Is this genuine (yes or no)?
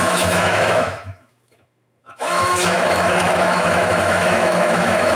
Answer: no